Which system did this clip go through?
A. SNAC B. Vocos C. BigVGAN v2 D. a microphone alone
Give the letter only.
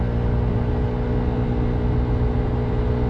D